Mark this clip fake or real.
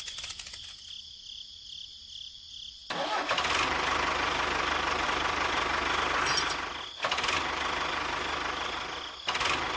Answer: real